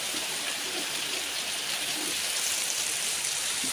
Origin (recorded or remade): remade